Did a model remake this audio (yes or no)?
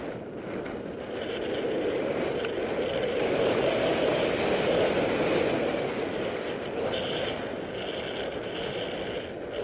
no